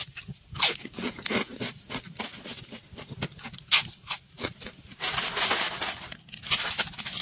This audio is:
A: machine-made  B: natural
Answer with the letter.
B